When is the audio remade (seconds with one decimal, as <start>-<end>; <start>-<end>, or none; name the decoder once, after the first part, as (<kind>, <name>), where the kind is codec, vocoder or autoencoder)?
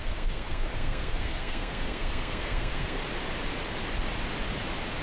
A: 0.0-3.0 (codec, SNAC)